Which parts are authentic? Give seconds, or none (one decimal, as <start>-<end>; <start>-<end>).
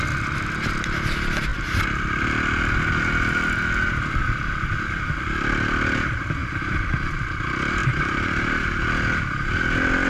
0.0-6.4; 7.1-7.8; 8.8-10.1